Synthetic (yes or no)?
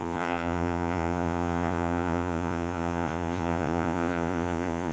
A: yes